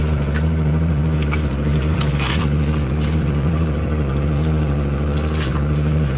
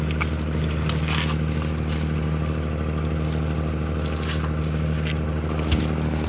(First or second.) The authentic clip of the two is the second